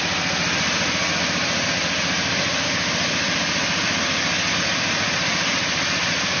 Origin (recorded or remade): recorded